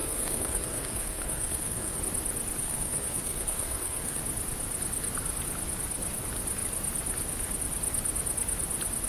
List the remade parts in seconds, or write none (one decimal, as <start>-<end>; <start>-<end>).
0.0-2.0; 2.6-4.2